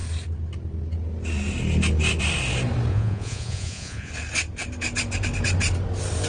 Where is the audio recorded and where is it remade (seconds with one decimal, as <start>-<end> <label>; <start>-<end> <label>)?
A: 0.0-2.9 recorded; 2.9-4.1 remade; 4.1-6.3 recorded